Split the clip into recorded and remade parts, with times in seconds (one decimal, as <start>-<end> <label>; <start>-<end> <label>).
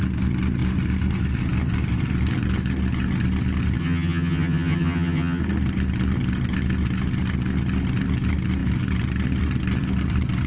0.0-3.8 recorded; 3.8-5.4 remade; 5.4-10.5 recorded